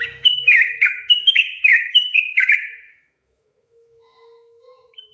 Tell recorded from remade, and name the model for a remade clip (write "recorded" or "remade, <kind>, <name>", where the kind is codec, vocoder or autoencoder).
remade, autoencoder, DAC-VAE